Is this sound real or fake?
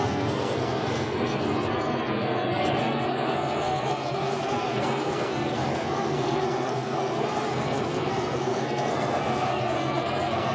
fake